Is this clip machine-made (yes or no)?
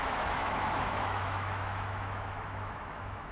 yes